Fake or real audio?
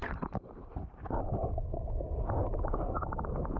real